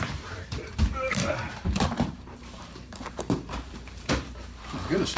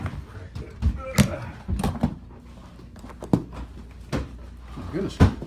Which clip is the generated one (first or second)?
first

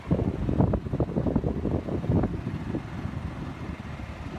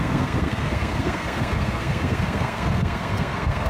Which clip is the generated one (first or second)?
second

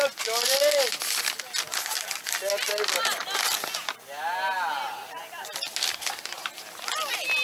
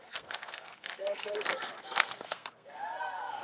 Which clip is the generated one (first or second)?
second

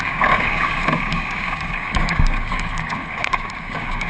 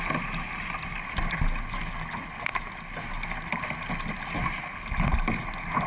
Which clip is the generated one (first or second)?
first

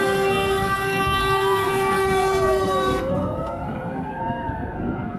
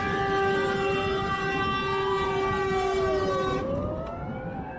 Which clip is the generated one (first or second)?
first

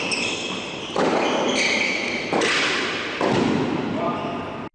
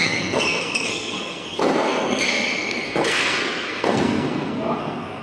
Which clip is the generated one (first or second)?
second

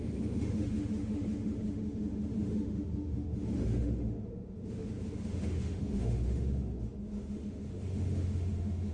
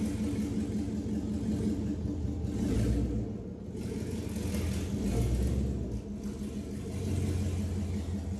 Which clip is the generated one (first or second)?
first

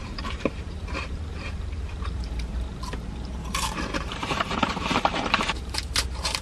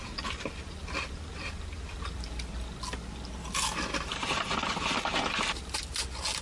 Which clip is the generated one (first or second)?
first